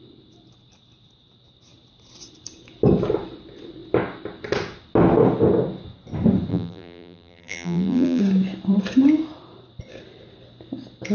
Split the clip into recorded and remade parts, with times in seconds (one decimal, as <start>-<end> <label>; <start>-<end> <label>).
0.0-6.5 recorded; 6.5-8.2 remade; 8.2-11.1 recorded